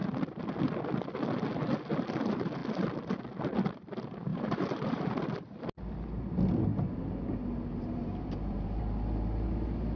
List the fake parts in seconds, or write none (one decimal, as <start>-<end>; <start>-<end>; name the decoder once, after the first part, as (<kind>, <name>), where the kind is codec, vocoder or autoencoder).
4.3-5.1 (vocoder, BigVGAN v2); 6.7-8.8